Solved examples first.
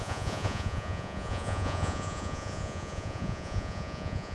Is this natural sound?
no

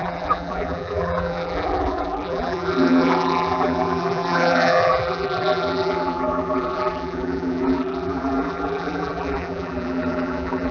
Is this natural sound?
no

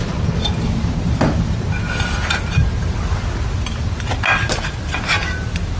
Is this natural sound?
yes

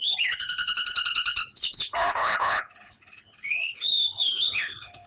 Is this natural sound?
no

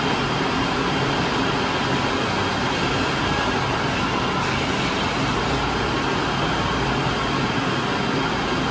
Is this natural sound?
yes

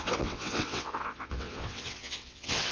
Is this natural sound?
no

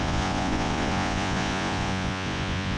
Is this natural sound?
no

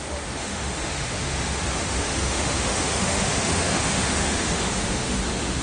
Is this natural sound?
no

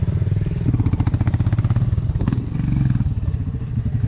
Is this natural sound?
yes